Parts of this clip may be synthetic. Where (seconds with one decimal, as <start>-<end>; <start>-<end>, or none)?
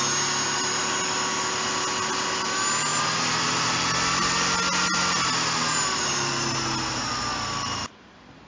none